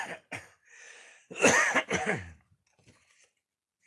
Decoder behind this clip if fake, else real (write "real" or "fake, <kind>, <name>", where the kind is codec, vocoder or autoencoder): real